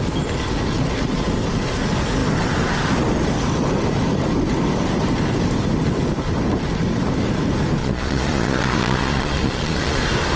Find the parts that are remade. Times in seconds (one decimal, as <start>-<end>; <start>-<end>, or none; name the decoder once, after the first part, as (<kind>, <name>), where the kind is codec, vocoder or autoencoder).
7.8-10.0 (vocoder, Vocos)